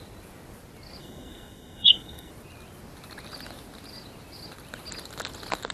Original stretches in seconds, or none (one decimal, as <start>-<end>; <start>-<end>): 0.0-1.0; 2.3-5.7